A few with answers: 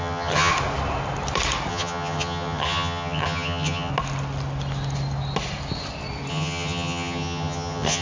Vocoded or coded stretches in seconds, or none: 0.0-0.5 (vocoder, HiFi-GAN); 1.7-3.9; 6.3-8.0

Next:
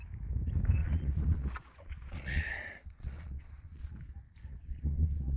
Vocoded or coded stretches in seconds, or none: 0.8-4.0 (vocoder, Vocos); 4.6-5.4

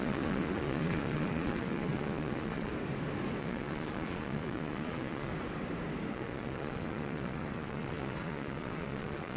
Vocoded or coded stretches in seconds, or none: 0.0-2.7 (vocoder, Vocos); 3.4-5.3; 6.1-9.4

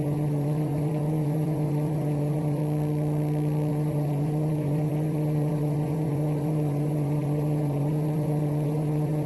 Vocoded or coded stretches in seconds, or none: 0.0-2.6 (vocoder, Vocos); 3.7-9.3

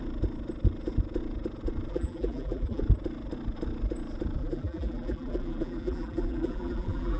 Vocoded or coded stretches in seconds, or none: 1.9-2.8 (vocoder, BigVGAN v2); 4.4-7.2

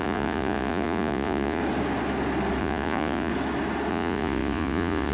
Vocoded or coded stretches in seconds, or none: 0.0-1.6 (vocoder, Vocos); 2.6-3.3; 3.9-5.1

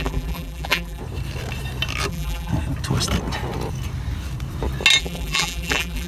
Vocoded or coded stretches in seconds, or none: 0.0-1.0 (vocoder, BigVGAN v2); 2.1-2.5; 5.0-6.1

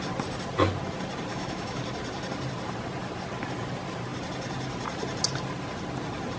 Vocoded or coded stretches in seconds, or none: 1.3-1.8 (autoencoder, DAC-VAE)